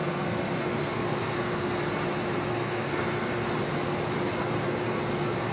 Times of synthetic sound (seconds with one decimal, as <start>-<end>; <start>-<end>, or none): 0.0-1.8; 2.5-3.5